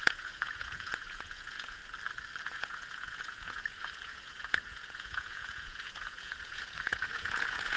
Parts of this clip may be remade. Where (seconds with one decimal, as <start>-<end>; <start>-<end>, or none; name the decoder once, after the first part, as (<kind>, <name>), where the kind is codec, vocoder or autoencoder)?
0.0-1.8 (vocoder, Vocos); 2.4-7.8